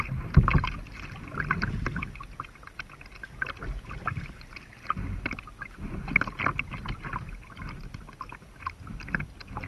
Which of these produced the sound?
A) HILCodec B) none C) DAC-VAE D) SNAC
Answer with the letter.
B